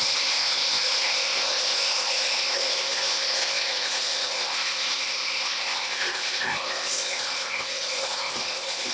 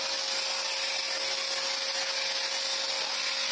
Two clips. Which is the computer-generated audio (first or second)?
first